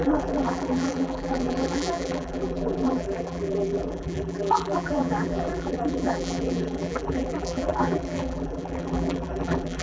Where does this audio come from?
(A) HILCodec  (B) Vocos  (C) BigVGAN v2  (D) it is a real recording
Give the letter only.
C